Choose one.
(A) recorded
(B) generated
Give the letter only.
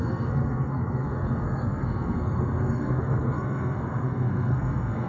B